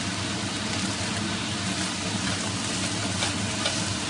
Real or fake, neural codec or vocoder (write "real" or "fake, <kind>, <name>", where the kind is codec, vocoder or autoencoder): real